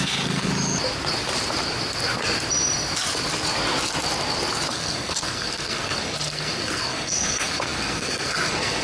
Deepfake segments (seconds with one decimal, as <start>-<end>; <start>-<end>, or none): 0.0-0.5; 4.7-8.8